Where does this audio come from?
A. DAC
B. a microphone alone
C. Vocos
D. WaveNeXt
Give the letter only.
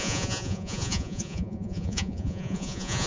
C